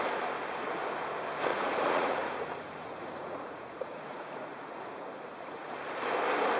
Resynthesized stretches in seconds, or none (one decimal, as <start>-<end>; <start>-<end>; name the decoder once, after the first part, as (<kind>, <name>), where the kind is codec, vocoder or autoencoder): 1.5-5.1 (vocoder, Vocos)